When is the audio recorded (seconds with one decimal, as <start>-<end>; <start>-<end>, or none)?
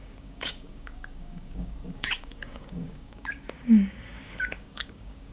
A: none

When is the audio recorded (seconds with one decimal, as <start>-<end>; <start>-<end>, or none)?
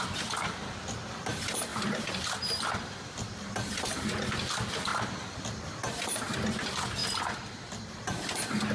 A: 0.0-1.7; 4.3-8.7